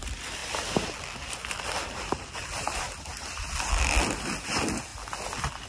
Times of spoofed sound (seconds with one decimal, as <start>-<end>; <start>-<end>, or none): none